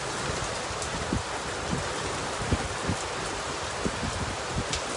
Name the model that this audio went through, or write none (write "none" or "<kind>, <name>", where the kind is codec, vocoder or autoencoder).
none